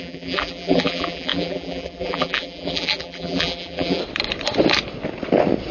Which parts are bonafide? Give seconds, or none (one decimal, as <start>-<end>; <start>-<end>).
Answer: 4.0-5.7